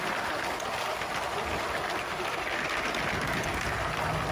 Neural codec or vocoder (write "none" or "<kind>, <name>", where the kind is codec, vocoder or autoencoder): none